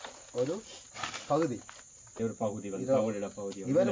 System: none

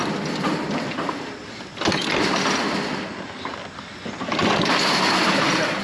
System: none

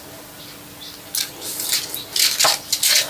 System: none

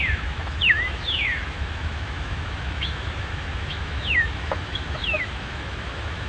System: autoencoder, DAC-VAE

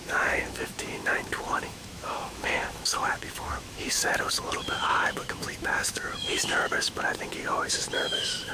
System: autoencoder, DAC-VAE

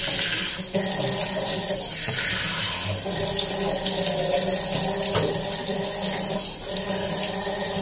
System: none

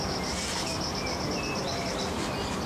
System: none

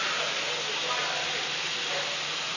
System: none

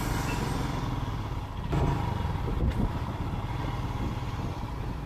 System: none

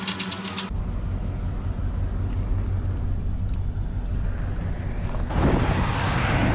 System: none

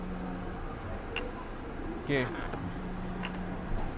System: none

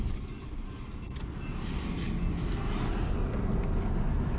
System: none